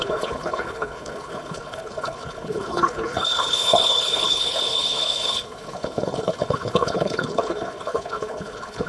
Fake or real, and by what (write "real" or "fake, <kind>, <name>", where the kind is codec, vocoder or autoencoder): fake, codec, HILCodec